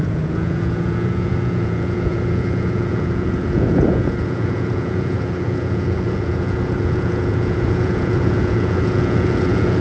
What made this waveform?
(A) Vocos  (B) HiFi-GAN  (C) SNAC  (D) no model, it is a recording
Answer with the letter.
A